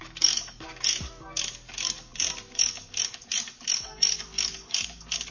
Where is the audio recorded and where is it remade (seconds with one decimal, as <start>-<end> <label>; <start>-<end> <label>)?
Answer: 0.0-5.3 remade